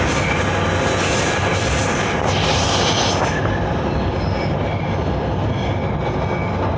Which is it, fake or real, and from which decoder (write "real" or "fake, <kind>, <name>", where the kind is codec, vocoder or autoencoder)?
real